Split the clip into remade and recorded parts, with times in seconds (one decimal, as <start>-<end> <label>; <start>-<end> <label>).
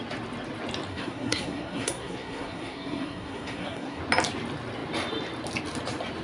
0.0-0.9 recorded; 0.9-4.0 remade; 4.0-6.2 recorded